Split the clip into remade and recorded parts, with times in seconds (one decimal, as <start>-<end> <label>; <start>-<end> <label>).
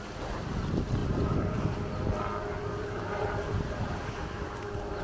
0.0-1.0 recorded; 1.0-1.6 remade; 1.6-2.8 recorded; 2.8-4.0 remade; 4.0-5.0 recorded